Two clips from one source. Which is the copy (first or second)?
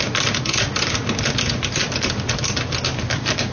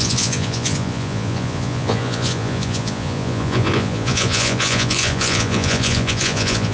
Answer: second